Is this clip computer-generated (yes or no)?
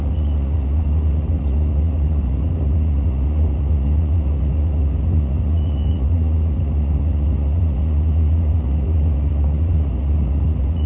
yes